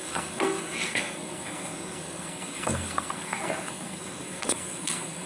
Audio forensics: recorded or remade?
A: remade